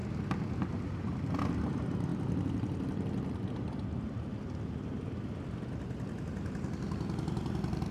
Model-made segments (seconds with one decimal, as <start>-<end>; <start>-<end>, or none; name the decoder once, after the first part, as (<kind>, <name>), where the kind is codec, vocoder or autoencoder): none